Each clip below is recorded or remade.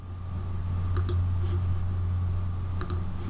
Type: recorded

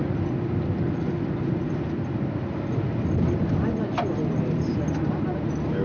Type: recorded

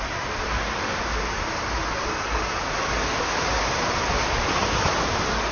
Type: recorded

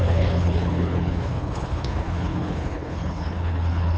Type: remade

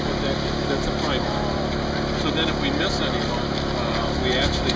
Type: recorded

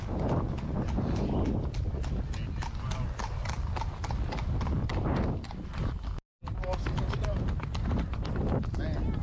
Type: recorded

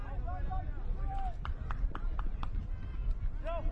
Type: recorded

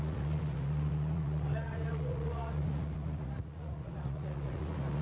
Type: remade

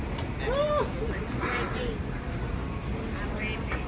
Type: recorded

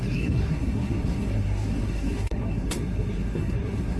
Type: remade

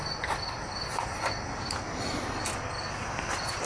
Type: remade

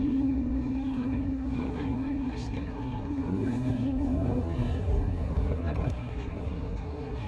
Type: remade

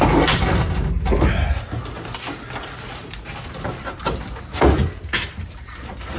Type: recorded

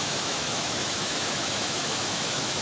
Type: remade